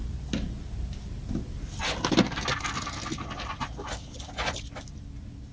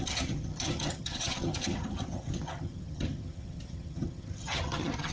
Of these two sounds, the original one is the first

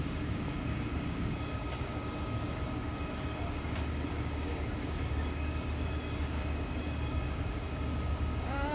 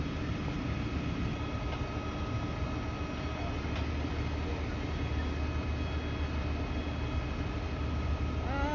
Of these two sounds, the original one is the second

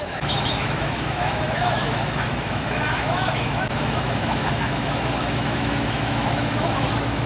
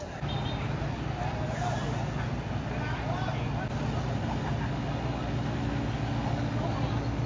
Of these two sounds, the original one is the second